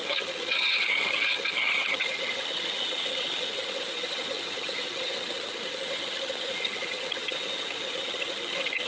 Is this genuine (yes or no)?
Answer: no